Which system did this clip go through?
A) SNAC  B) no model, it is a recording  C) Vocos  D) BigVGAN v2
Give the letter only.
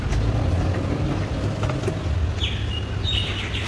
B